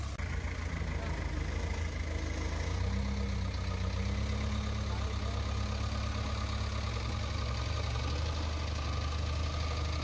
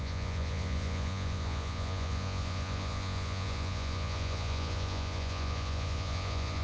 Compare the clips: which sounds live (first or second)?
first